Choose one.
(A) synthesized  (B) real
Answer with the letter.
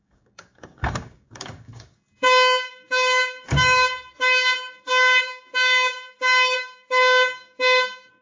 A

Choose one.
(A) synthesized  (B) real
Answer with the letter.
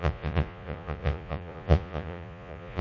A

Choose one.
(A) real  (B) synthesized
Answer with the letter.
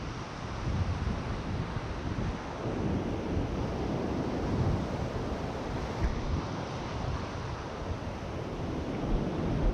A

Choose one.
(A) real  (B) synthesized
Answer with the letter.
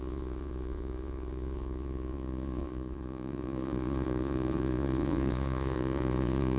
B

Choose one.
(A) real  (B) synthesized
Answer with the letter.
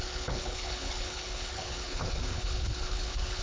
B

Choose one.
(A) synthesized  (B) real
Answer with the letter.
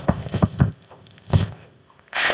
A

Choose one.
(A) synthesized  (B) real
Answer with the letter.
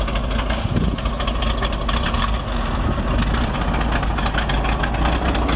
B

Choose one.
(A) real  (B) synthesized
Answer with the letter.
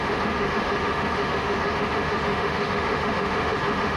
B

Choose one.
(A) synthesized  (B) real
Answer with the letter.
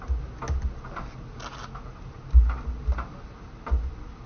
B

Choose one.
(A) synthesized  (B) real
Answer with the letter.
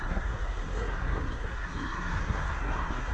A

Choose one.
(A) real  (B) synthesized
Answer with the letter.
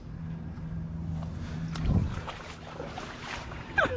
A